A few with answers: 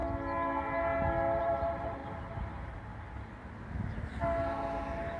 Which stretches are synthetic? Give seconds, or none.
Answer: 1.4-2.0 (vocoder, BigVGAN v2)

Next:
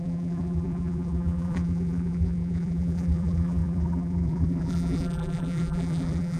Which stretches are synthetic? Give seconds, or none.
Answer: 0.0-6.4 (vocoder, BigVGAN v2)

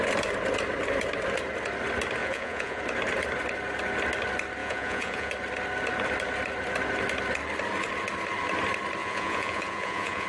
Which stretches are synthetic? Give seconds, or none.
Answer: 2.2-2.8 (vocoder, Vocos); 4.6-5.3; 9.0-10.3